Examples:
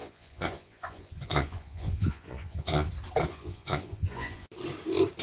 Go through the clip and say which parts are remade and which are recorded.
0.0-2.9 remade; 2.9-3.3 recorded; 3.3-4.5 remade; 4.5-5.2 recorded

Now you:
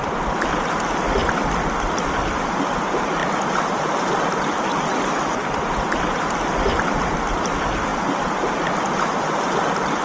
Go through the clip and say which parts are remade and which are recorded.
0.0-10.0 recorded